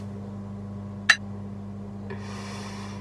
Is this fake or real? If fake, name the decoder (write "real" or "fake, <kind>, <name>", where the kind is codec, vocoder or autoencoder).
real